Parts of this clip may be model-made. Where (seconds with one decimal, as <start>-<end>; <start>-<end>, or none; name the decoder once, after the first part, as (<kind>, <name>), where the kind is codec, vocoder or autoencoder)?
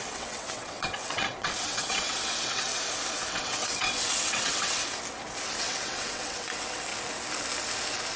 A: 0.0-2.7 (vocoder, WaveNeXt); 3.3-4.8; 5.6-6.9